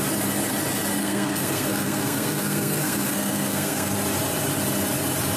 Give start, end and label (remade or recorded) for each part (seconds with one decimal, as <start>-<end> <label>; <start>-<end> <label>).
0.0-1.0 recorded; 1.0-3.9 remade; 3.9-5.4 recorded